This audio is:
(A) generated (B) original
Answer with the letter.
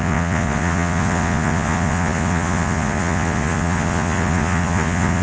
A